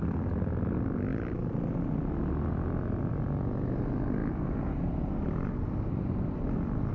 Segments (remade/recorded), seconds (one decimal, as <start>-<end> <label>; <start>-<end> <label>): 0.0-4.2 recorded; 4.2-6.4 remade; 6.4-6.9 recorded